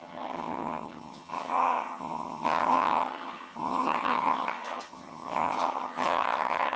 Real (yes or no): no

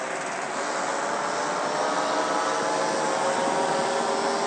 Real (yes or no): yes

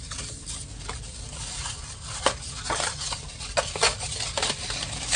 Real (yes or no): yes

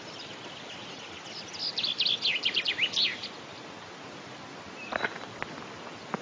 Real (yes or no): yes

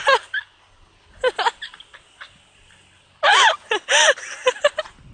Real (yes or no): yes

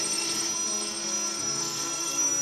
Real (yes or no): no